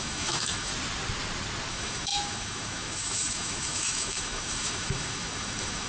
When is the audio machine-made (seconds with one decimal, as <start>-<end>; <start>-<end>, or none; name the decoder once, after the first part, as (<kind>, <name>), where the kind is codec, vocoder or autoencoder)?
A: 0.0-0.7 (autoencoder, DAC-VAE); 1.7-5.9